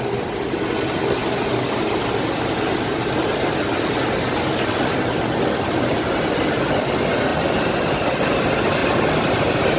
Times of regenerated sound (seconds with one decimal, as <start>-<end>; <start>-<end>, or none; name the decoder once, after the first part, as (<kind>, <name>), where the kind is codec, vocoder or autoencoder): none